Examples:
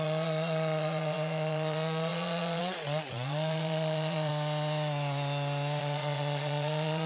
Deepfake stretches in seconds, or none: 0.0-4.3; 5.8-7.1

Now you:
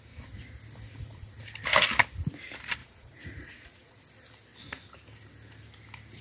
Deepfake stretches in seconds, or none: 0.9-1.4; 2.8-4.0

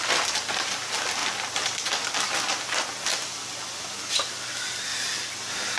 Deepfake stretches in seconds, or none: none

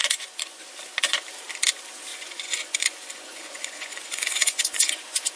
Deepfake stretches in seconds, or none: 0.0-0.6; 2.1-5.4